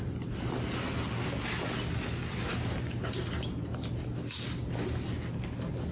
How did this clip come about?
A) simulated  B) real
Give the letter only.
B